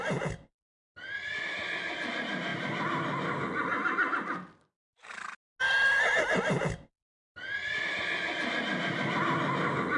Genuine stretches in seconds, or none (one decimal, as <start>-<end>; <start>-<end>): 0.0-10.0